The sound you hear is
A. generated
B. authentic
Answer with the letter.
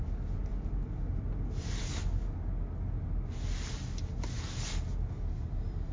B